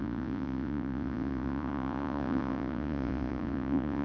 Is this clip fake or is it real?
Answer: fake